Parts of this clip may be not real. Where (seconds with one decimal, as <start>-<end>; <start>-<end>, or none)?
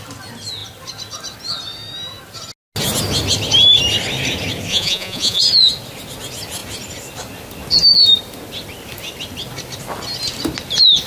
4.7-5.4